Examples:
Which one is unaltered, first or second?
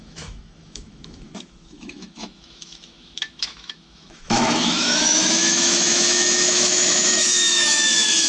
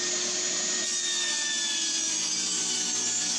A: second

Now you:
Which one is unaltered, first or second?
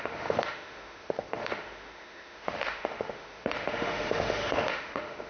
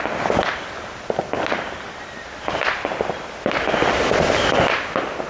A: second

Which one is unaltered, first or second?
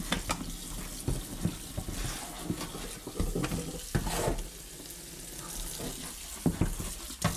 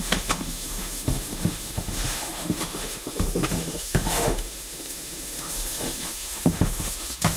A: first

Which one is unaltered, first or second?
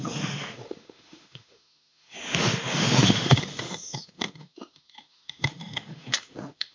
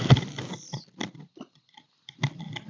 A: second